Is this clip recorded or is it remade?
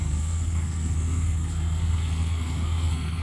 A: remade